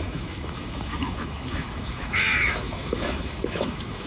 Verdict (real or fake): fake